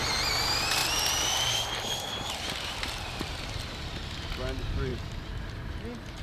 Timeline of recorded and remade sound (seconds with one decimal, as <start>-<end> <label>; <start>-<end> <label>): 0.0-6.2 recorded